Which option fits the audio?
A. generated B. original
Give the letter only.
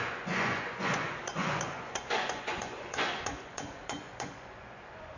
A